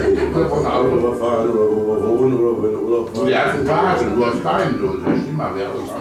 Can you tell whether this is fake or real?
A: real